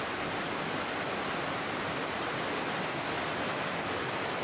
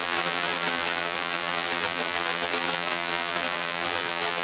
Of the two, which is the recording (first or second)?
first